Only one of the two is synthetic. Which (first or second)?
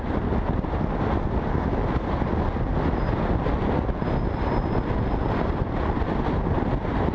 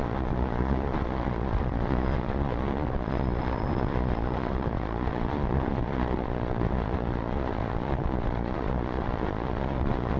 second